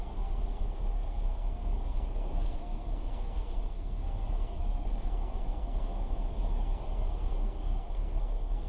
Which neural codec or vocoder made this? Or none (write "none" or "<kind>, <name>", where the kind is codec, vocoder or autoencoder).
codec, SNAC